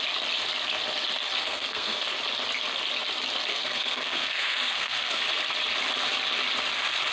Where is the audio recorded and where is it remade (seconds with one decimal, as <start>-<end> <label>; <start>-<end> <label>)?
0.0-1.4 recorded; 1.4-2.0 remade; 2.0-3.5 recorded; 3.5-5.2 remade; 5.2-7.1 recorded